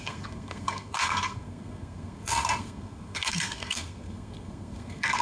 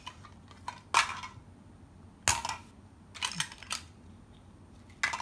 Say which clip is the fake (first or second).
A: first